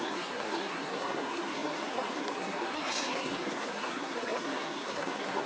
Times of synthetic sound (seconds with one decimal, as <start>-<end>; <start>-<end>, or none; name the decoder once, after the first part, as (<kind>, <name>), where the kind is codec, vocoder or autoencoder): 0.0-5.5 (codec, SNAC)